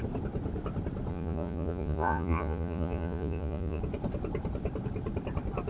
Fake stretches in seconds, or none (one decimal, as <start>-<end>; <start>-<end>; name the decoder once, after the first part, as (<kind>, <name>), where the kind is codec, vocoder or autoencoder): 1.1-3.8 (vocoder, Vocos)